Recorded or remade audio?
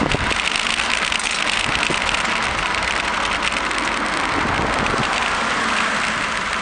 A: recorded